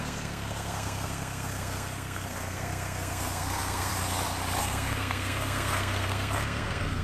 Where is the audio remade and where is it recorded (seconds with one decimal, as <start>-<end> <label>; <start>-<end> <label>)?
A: 0.0-3.9 remade; 3.9-4.6 recorded; 4.6-7.0 remade